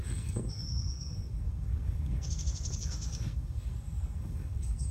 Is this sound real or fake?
fake